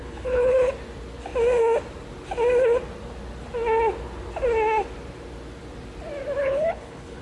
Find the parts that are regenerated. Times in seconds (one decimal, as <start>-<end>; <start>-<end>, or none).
0.0-0.7; 6.4-7.2